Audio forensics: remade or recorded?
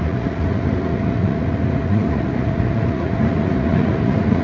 remade